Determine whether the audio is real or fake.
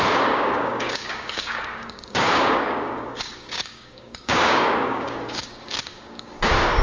fake